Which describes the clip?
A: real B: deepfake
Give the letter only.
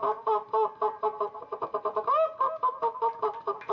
A